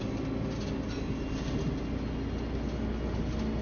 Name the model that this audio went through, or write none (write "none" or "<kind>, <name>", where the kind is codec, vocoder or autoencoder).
none